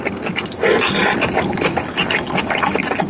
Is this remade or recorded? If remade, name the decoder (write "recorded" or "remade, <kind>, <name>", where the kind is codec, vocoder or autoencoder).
recorded